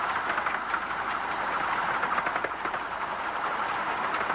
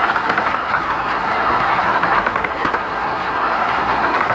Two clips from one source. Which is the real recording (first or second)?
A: first